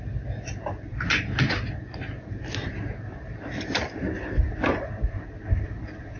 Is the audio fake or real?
real